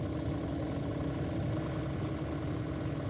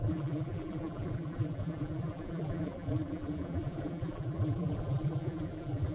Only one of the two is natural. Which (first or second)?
first